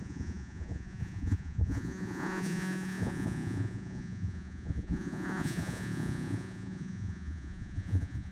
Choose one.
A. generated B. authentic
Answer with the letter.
A